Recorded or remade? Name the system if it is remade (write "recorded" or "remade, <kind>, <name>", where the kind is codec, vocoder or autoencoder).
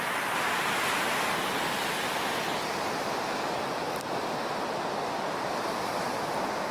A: recorded